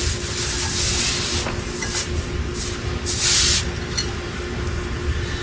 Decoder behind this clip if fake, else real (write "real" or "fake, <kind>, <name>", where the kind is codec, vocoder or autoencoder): real